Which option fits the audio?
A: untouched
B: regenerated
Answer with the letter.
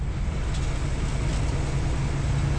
A